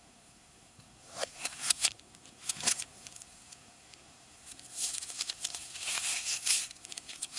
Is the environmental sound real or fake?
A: fake